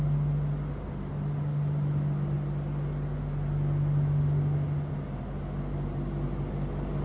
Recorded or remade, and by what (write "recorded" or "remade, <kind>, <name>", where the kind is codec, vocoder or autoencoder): recorded